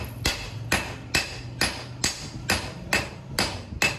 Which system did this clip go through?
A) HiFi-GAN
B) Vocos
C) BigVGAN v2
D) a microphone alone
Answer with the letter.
D